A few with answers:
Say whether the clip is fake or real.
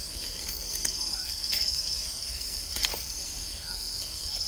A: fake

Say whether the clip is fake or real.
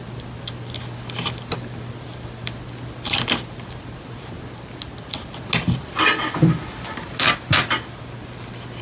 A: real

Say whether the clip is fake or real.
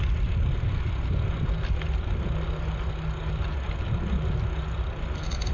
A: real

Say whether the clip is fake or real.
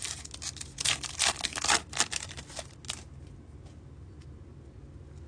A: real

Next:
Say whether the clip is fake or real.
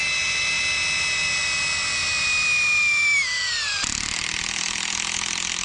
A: real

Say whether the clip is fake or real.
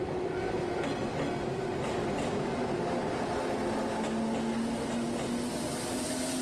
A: real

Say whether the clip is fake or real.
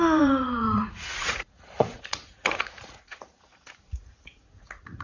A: fake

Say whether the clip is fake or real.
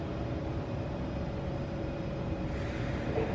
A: real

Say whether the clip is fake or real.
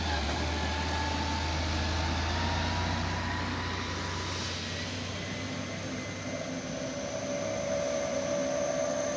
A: real